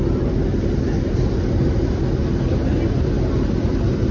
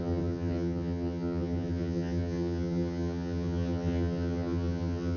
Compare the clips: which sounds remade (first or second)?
second